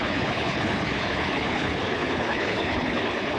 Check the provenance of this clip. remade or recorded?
remade